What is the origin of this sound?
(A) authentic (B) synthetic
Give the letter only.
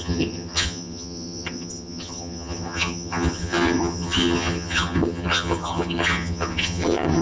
B